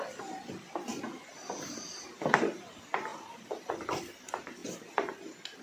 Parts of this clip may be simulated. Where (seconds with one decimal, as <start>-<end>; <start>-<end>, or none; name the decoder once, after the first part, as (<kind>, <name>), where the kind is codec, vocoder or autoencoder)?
3.1-3.7 (vocoder, BigVGAN v2)